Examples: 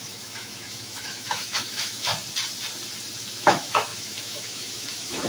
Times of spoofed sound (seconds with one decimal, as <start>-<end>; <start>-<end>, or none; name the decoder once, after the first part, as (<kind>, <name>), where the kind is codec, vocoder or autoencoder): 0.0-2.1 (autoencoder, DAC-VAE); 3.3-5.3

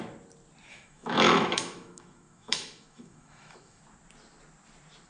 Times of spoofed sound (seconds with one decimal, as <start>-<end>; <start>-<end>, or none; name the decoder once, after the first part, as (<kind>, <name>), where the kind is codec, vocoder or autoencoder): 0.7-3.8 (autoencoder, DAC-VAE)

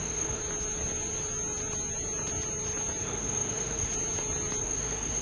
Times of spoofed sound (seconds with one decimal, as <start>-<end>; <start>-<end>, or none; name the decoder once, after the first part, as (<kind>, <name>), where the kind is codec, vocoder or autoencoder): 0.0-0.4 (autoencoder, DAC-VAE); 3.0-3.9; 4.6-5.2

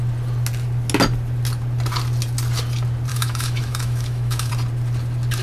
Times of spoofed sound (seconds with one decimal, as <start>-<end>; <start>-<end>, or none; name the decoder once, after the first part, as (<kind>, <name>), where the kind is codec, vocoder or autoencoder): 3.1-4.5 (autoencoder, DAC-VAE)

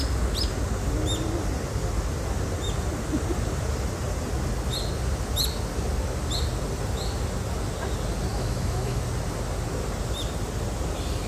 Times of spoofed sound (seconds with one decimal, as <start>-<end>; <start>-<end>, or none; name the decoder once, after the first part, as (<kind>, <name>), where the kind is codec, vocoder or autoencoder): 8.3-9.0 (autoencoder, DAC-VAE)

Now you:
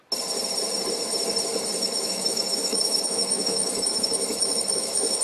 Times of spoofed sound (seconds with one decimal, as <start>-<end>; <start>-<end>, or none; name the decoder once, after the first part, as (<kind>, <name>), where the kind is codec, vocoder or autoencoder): 1.8-5.2 (autoencoder, DAC-VAE)

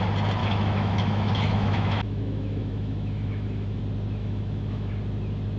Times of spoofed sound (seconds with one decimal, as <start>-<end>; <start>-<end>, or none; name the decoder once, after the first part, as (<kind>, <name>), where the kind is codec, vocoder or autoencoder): 0.4-3.8 (autoencoder, DAC-VAE); 4.2-4.9

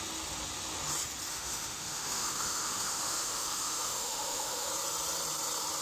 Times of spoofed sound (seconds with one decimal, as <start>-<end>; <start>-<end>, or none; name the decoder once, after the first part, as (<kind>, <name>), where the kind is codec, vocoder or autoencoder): 1.3-4.7 (autoencoder, DAC-VAE)